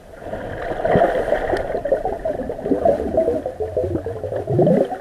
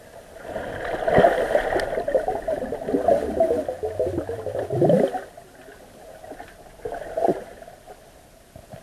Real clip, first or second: second